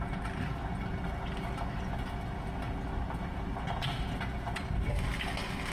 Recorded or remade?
recorded